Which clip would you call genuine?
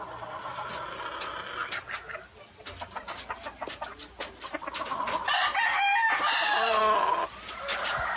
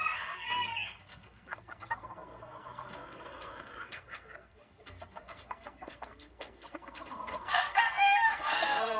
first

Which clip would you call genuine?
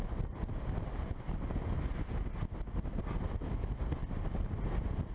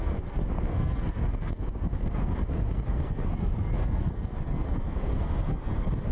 first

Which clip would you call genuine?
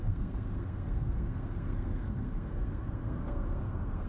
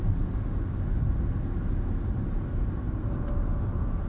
second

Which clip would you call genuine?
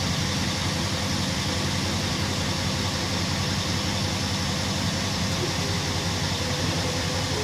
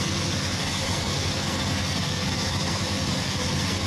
first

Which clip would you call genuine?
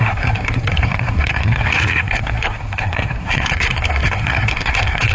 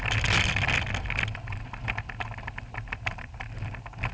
second